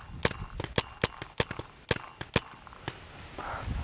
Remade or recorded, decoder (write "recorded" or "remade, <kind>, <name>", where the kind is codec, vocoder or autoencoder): recorded